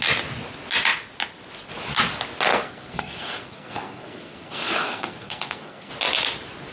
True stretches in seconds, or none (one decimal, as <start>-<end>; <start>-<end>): 0.0-2.5; 5.9-6.7